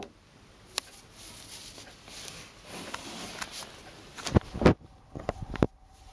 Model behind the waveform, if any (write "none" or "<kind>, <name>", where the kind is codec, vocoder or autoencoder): none